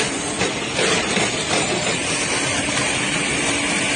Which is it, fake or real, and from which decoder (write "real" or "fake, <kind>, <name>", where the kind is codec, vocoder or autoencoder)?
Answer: real